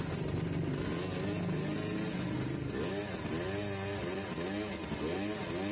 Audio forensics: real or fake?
real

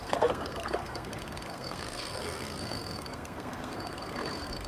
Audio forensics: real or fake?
fake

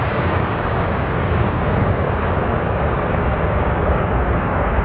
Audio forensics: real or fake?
fake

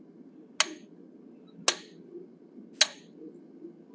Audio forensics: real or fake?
real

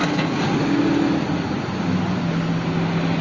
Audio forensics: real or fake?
real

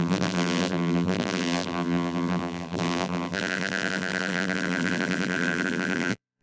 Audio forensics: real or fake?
fake